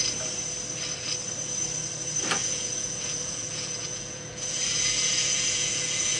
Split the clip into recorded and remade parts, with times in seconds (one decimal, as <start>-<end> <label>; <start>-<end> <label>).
0.0-2.4 recorded; 2.4-6.2 remade